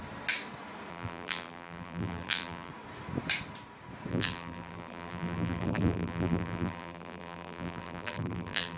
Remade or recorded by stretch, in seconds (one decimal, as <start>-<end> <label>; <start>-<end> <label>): 0.0-0.9 recorded; 0.9-2.7 remade; 2.7-4.1 recorded; 4.1-8.8 remade

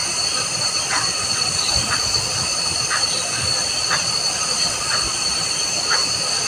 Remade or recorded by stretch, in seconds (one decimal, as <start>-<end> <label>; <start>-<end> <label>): 0.0-6.5 recorded

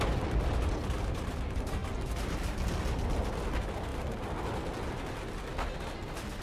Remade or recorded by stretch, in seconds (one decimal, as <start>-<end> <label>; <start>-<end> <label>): 0.0-6.4 recorded

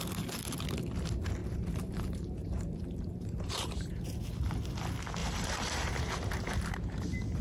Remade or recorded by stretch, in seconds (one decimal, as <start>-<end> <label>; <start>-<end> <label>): 0.0-1.4 recorded; 1.4-3.9 remade; 3.9-5.2 recorded; 5.2-7.0 remade; 7.0-7.4 recorded

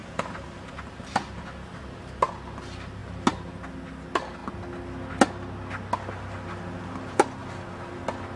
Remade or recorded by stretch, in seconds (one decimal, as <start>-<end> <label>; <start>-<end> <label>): 0.0-0.7 remade; 0.7-8.4 recorded

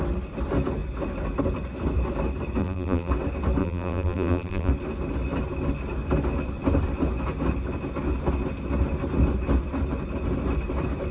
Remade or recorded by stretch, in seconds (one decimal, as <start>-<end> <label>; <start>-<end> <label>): 0.0-2.6 recorded; 2.6-3.1 remade; 3.1-3.6 recorded; 3.6-4.7 remade; 4.7-11.1 recorded